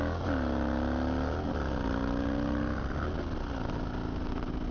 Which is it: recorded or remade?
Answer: recorded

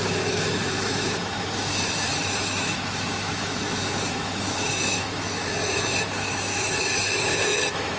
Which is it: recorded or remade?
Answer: remade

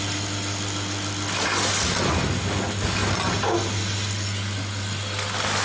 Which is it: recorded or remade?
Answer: recorded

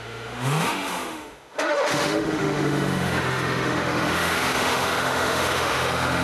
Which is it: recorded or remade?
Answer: remade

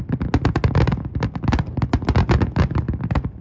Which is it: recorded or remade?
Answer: recorded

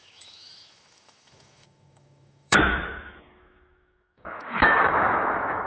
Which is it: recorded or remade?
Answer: remade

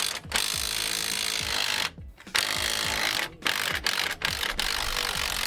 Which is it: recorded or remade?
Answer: recorded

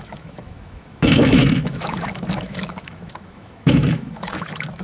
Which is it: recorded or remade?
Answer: remade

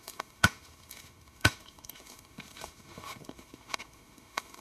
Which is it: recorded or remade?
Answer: remade